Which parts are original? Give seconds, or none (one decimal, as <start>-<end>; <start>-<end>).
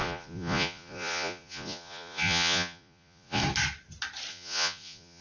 3.4-4.3